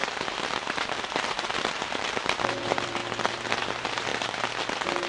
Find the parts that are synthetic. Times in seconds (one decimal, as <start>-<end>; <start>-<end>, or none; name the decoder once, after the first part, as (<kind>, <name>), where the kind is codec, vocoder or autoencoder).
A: 0.0-3.0 (vocoder, BigVGAN v2); 3.6-4.1